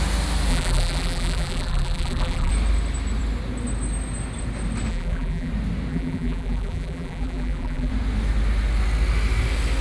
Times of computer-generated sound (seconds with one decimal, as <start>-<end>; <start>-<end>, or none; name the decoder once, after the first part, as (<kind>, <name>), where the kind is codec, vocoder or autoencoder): 0.5-2.5 (vocoder, BigVGAN v2); 4.9-5.5; 5.9-7.9